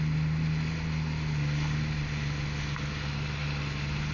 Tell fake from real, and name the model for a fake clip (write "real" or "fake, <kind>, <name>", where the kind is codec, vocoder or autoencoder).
real